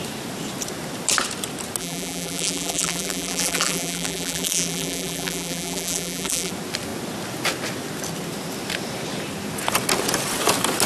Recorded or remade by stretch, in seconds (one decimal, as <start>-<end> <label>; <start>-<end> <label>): 0.0-1.8 recorded; 1.8-6.5 remade; 6.5-10.9 recorded

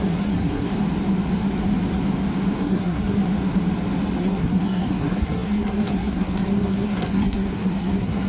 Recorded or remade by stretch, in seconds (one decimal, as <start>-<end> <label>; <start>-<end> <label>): 0.0-0.7 remade; 0.7-2.6 recorded; 2.6-3.2 remade; 3.2-4.2 recorded; 4.2-8.3 remade

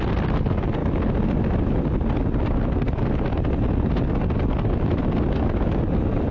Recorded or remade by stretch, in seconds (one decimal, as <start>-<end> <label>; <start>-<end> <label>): 0.0-6.3 recorded

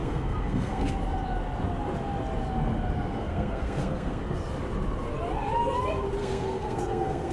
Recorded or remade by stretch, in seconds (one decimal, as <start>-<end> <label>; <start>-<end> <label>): 0.0-0.9 remade; 0.9-3.2 recorded; 3.2-4.2 remade; 4.2-6.2 recorded; 6.2-7.3 remade

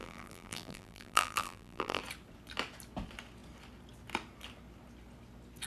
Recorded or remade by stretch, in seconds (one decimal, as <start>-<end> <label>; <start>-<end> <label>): 0.0-2.0 remade; 2.0-5.7 recorded